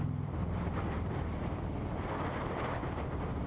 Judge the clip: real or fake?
fake